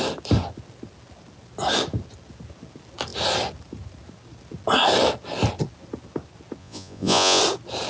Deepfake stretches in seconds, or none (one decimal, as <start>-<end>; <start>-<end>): 6.6-7.4